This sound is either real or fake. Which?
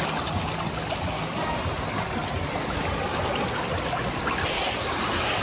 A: real